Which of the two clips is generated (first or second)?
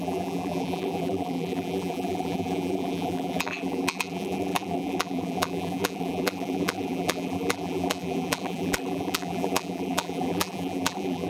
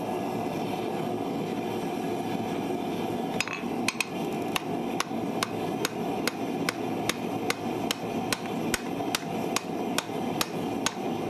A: first